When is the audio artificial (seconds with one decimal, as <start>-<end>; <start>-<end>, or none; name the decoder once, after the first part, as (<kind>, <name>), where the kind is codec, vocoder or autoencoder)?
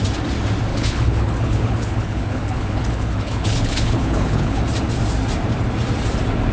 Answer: 0.7-4.6 (codec, HILCodec)